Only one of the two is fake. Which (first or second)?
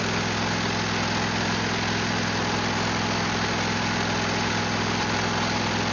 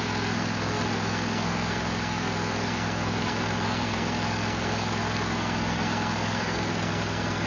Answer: second